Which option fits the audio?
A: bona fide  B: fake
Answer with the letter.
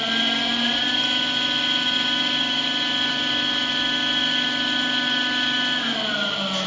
A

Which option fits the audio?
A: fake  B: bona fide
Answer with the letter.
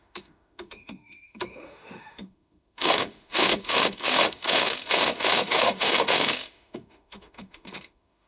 A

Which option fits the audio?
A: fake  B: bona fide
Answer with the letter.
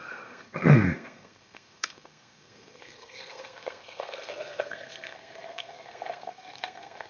A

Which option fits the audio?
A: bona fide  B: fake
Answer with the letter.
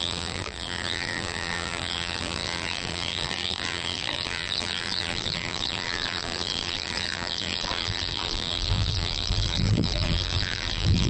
B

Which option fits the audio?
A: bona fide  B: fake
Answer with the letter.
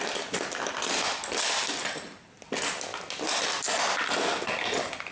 A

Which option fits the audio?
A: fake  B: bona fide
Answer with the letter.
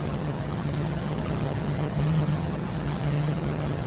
A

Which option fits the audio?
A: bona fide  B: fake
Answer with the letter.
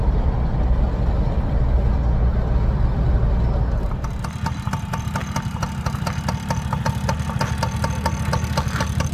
A